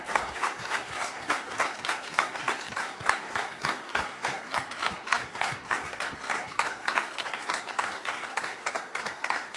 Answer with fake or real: fake